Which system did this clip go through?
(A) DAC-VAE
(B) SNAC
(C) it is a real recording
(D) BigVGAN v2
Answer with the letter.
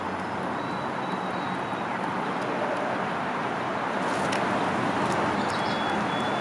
C